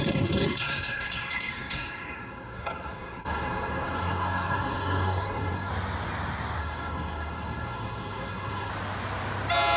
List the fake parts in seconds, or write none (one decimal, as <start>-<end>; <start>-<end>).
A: 0.0-5.7; 6.6-8.7